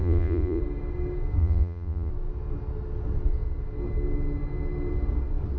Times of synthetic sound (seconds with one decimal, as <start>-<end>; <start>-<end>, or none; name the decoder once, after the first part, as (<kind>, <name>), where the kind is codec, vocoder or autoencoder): 0.0-0.6 (vocoder, Vocos); 1.4-2.1